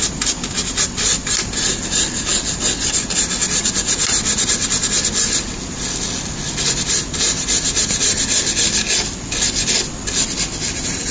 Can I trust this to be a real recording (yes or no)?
yes